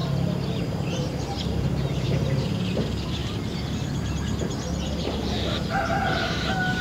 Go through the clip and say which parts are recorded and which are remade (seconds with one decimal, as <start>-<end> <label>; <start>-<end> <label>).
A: 0.0-0.6 recorded; 0.6-3.2 remade; 3.2-6.0 recorded; 6.0-6.8 remade